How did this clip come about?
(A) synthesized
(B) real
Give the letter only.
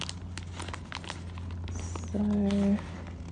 B